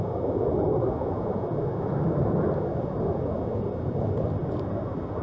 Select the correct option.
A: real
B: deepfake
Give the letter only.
A